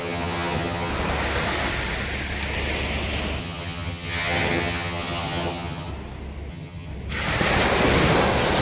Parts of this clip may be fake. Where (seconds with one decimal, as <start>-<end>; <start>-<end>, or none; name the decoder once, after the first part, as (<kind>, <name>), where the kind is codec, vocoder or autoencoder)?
0.0-0.9 (vocoder, HiFi-GAN); 3.4-5.9; 6.5-6.9